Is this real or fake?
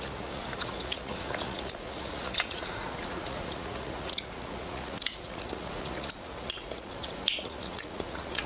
fake